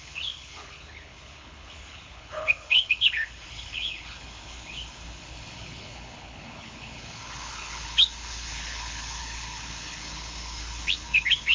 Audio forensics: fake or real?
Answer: fake